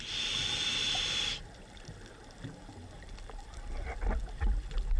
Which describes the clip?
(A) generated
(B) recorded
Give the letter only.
B